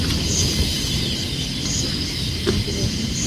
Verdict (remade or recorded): recorded